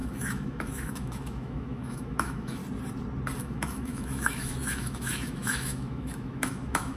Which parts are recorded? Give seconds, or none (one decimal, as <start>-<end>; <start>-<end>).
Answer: 2.6-3.4